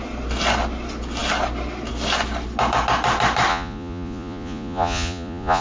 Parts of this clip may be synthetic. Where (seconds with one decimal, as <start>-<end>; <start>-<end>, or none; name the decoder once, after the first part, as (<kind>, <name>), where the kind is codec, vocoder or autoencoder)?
3.5-5.6 (vocoder, Vocos)